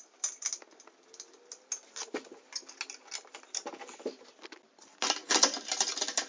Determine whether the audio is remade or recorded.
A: recorded